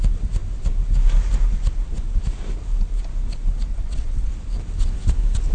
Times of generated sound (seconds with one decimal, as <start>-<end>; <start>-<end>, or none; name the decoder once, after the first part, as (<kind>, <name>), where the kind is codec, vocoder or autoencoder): 3.7-4.3 (vocoder, WaveNeXt)